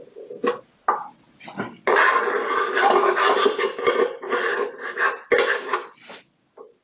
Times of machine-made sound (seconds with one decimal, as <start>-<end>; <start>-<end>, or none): none